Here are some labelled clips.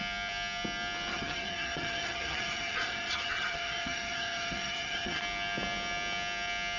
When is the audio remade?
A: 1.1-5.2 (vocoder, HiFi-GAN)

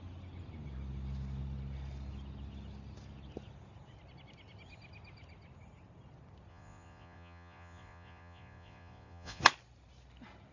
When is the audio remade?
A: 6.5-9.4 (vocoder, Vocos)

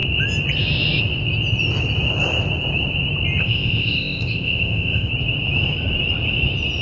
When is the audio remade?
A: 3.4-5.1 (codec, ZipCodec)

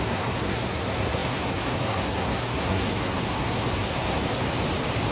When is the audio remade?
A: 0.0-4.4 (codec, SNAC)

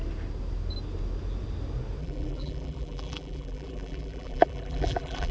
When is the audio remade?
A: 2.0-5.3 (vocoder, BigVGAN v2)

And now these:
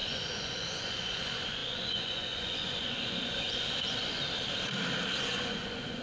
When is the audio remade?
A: 0.0-4.2 (vocoder, Vocos); 5.4-6.0